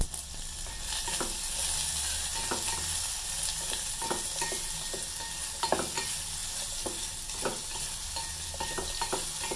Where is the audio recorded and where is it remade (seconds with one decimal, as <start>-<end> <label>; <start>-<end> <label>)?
0.0-9.6 recorded